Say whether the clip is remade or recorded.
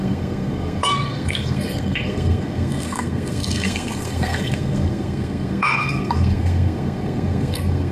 remade